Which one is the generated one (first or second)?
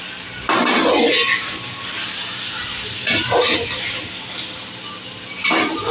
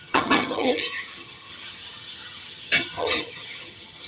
second